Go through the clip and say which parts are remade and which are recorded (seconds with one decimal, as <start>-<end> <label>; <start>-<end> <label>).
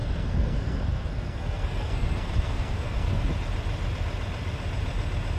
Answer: 0.0-3.2 remade; 3.2-5.4 recorded